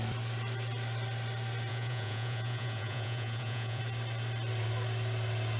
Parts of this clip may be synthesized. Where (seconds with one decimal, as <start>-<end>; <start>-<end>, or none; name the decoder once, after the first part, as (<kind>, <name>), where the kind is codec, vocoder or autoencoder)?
1.7-3.8 (vocoder, Vocos)